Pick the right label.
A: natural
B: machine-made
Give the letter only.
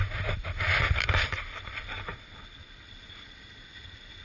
B